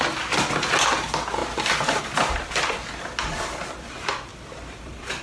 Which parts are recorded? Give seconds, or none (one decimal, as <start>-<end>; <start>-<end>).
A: 0.0-4.3